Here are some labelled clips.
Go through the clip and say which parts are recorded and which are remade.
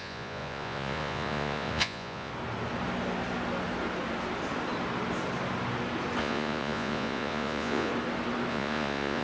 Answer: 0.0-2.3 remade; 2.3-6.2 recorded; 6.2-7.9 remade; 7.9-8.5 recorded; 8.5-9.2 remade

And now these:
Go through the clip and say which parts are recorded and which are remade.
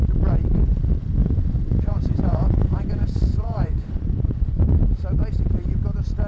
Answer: 0.0-1.2 recorded; 1.2-4.8 remade; 4.8-6.3 recorded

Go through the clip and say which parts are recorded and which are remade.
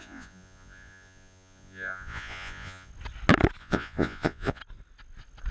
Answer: 0.0-2.9 remade; 2.9-3.6 recorded; 3.6-4.6 remade; 4.6-5.5 recorded